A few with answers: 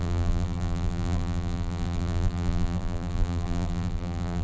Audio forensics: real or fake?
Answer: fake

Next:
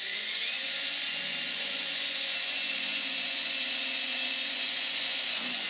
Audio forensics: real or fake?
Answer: fake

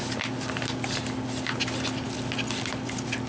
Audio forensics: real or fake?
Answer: real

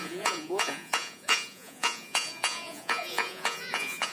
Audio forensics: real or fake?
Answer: fake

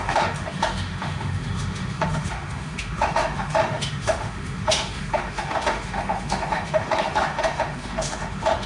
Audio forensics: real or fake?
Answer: fake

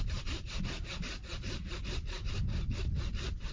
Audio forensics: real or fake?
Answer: fake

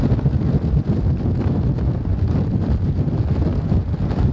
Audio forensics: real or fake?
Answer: real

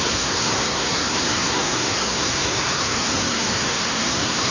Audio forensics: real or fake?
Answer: fake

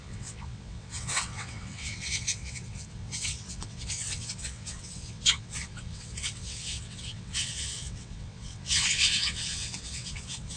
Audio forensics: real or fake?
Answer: fake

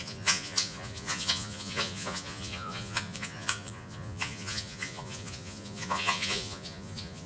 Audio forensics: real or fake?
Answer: fake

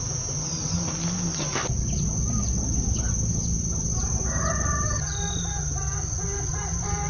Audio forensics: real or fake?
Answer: real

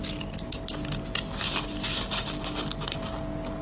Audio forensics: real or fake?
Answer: real